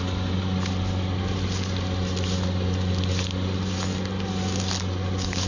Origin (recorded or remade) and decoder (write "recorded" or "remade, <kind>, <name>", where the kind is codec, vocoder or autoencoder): recorded